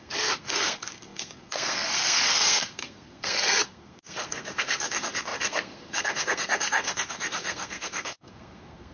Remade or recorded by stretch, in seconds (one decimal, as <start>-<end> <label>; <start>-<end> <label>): 0.0-8.9 remade